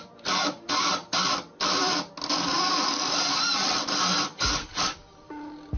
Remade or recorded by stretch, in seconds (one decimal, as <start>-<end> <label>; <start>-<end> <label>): 0.0-5.8 recorded